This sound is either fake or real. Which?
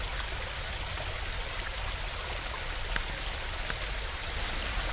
real